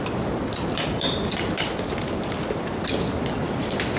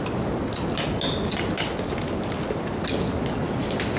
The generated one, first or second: first